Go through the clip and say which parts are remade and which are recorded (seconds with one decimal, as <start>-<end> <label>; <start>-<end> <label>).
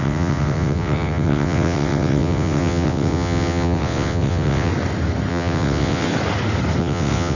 0.0-4.7 remade; 4.7-5.3 recorded; 5.3-6.1 remade; 6.1-6.8 recorded; 6.8-7.4 remade